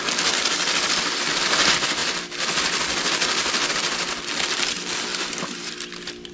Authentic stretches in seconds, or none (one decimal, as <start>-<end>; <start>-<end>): 0.0-6.3